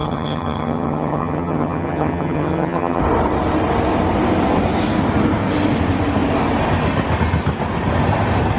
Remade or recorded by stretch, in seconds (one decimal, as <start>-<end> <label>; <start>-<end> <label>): 0.0-3.0 remade; 3.0-8.6 recorded